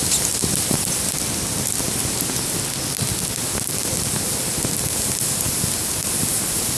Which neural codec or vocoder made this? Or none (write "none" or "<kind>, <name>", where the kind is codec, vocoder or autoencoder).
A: none